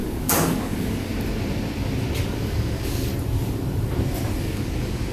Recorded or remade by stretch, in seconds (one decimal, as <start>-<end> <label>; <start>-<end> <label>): 0.0-1.1 remade; 1.1-2.2 recorded; 2.2-3.1 remade; 3.1-4.4 recorded; 4.4-5.1 remade